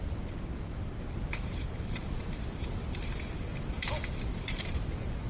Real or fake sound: fake